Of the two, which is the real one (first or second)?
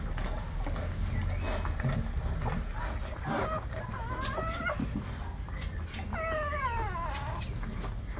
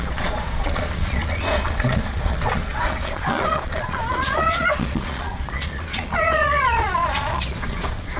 first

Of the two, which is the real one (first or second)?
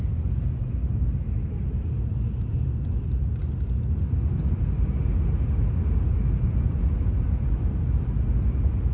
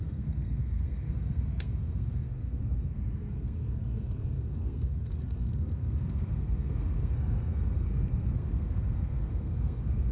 first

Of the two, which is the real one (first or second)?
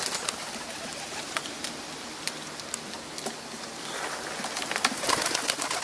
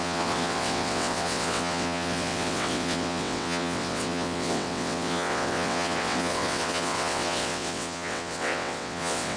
first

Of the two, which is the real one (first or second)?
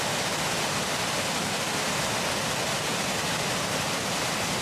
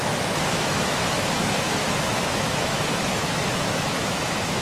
first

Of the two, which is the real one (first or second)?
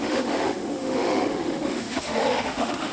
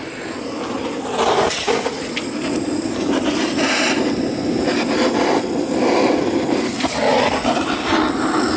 second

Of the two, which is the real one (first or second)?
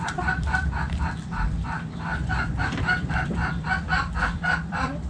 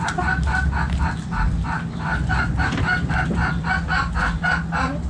second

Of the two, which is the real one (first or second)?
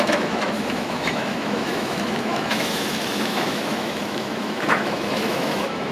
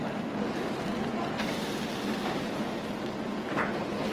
second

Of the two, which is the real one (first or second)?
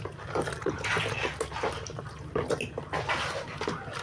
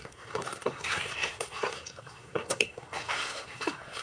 first